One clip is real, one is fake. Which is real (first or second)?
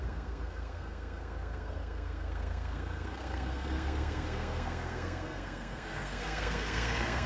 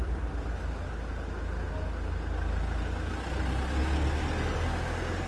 second